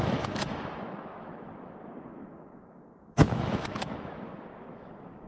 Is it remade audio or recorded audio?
remade